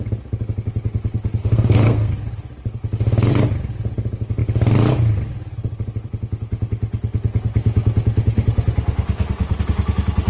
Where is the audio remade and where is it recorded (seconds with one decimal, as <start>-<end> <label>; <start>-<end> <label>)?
0.0-1.4 recorded; 1.4-2.1 remade; 2.1-10.3 recorded